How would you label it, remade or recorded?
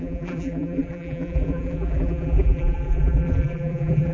remade